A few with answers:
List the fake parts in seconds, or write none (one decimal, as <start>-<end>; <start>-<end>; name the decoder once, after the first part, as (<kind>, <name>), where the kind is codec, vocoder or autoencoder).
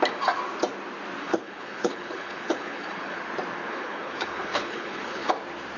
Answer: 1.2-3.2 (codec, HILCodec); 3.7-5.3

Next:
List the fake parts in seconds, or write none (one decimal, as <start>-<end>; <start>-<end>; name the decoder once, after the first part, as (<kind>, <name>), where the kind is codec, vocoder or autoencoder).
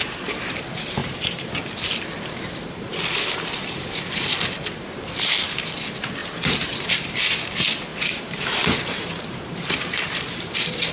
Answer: 1.0-1.5 (vocoder, BigVGAN v2); 6.2-7.2; 7.9-10.9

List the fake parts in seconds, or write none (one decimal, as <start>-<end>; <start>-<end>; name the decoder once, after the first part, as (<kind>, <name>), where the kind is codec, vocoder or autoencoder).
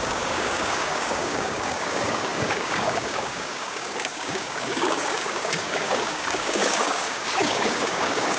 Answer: 0.0-8.4 (codec, DAC)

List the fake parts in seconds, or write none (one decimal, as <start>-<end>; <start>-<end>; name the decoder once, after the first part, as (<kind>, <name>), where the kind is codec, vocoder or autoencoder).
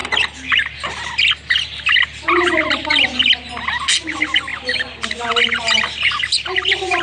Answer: none